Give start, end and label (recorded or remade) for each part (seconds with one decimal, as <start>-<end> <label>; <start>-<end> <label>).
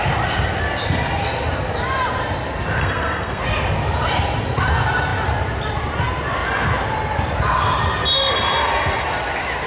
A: 0.0-2.8 recorded; 2.8-3.4 remade; 3.4-9.7 recorded